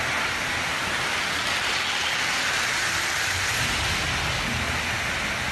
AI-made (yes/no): no